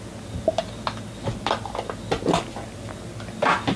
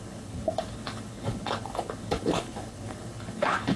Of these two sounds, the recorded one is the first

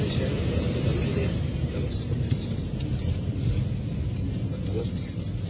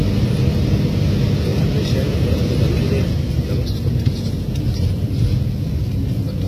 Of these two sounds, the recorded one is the second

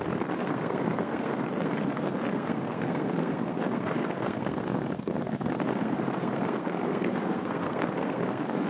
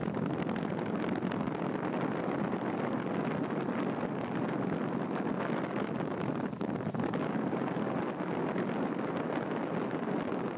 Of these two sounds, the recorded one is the second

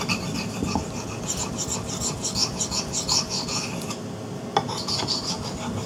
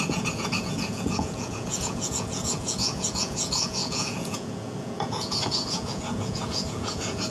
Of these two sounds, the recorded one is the first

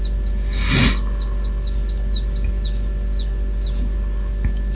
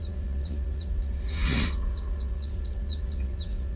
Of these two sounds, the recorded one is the first